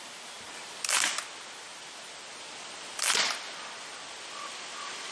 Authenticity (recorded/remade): recorded